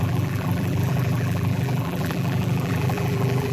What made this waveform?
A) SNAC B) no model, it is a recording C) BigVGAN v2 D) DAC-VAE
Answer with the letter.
C